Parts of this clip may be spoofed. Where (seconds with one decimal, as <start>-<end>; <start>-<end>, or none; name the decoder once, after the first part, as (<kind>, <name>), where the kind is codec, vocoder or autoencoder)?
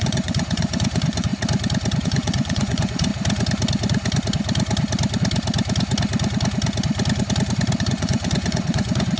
0.0-1.3 (vocoder, Vocos); 2.0-3.1; 7.8-9.2